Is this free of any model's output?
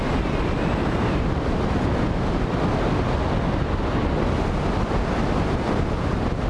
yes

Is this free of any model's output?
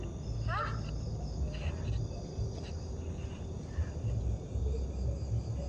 yes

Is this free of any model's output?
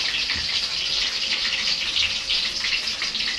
yes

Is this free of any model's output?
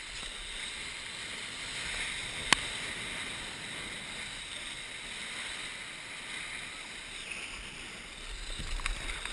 yes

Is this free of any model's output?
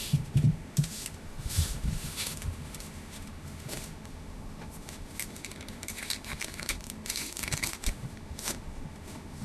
no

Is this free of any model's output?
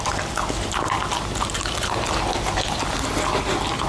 yes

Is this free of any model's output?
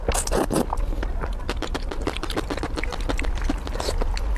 yes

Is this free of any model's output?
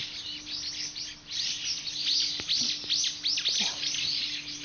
yes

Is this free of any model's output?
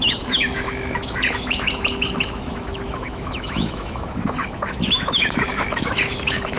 no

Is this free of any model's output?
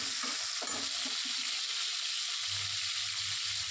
yes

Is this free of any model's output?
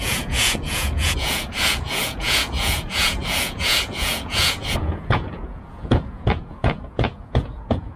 no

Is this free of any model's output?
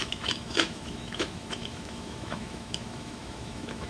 no